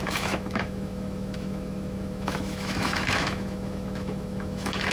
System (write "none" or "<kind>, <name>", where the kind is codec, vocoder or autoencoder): autoencoder, DAC-VAE